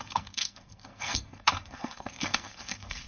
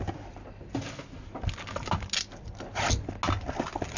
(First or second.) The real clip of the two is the second